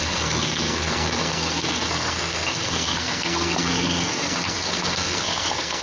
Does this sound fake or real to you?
fake